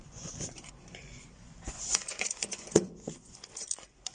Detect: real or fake fake